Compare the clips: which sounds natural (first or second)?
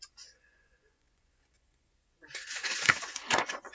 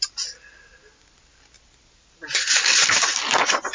second